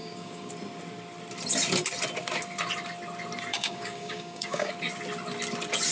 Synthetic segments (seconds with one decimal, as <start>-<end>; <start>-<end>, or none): 0.0-0.5; 3.5-4.7